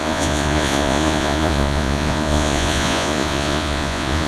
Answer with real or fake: fake